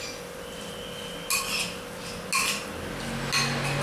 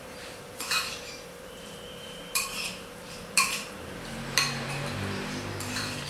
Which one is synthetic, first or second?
second